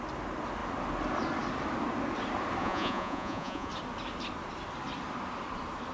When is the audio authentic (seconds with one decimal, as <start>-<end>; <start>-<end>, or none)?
0.0-2.6; 3.7-5.9